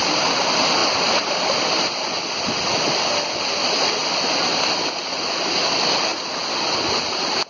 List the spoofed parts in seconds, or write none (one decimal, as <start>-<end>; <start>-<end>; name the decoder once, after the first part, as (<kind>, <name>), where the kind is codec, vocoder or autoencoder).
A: none